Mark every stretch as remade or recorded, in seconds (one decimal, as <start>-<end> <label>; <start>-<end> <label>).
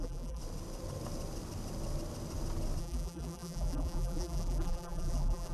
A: 0.0-0.4 remade; 0.4-2.8 recorded; 2.8-5.5 remade